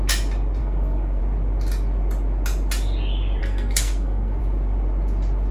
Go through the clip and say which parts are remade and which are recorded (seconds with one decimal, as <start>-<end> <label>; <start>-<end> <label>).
0.0-0.6 recorded; 0.6-1.2 remade; 1.2-3.4 recorded; 3.4-4.4 remade; 4.4-5.5 recorded